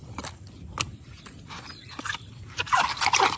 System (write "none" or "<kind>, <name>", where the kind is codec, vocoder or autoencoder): none